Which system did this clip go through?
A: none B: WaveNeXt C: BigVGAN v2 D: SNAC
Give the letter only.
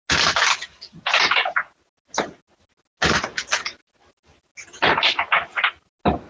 A